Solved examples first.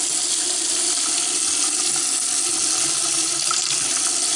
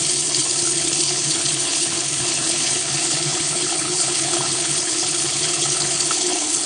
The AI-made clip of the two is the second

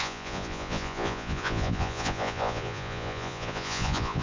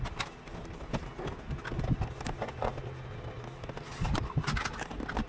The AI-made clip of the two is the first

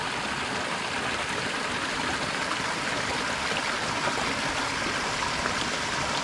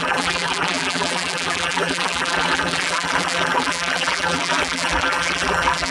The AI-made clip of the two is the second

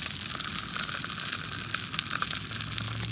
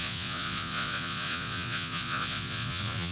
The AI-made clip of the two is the second